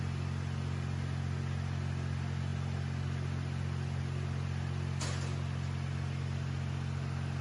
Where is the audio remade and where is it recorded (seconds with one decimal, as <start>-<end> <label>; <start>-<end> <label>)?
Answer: 0.0-7.4 recorded